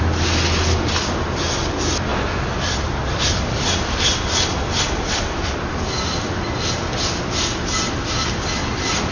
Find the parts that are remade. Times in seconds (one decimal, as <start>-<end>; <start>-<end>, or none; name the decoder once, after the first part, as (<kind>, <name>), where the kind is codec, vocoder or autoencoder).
none